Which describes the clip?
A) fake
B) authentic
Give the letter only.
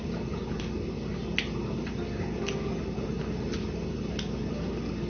B